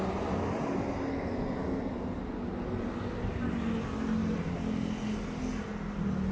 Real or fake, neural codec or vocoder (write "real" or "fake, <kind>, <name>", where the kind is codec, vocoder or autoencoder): real